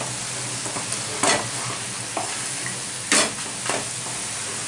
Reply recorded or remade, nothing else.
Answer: recorded